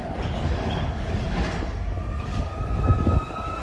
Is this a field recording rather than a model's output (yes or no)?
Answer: no